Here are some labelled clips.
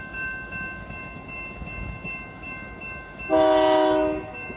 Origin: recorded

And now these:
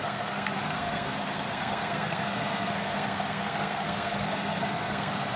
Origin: remade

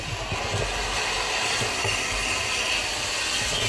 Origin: recorded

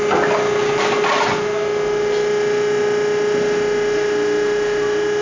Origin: recorded